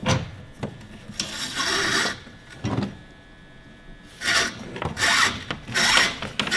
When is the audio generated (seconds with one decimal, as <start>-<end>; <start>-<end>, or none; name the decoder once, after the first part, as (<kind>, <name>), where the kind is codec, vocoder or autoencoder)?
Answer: none